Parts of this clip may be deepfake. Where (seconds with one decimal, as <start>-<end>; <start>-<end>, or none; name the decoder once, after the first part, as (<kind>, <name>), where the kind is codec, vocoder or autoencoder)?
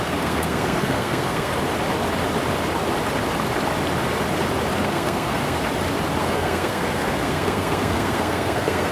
0.0-1.5 (codec, SNAC); 4.8-5.6; 6.2-8.9